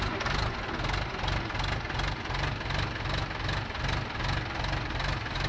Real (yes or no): yes